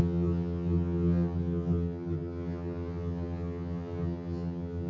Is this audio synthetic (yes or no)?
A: yes